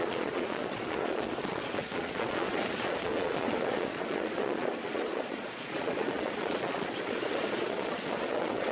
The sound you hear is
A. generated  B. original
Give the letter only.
A